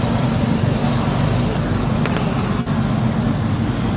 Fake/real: real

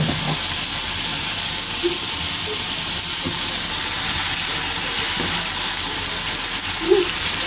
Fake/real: real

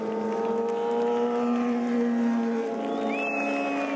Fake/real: real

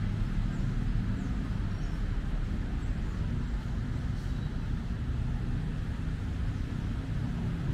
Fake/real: real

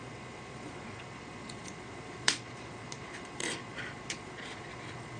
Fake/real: fake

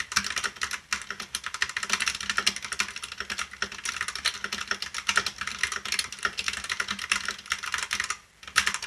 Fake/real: real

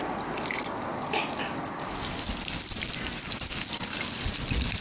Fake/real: real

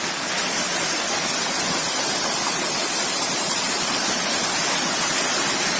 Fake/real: real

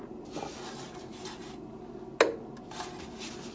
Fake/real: real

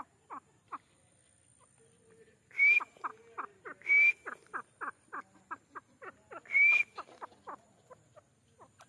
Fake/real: real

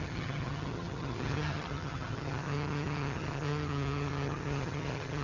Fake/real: fake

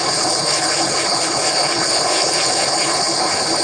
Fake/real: fake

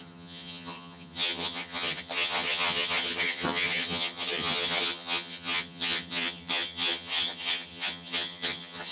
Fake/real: fake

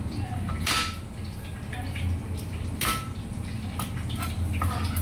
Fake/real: real